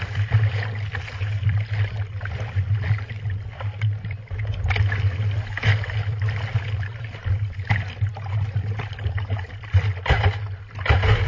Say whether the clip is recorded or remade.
recorded